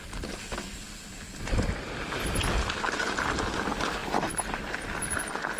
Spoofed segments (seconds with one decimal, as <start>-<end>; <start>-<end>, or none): 4.0-5.0